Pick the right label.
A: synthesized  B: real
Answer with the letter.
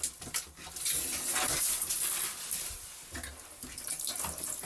B